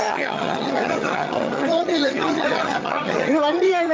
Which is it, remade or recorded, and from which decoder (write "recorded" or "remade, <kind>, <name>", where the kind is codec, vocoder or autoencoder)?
remade, vocoder, HiFi-GAN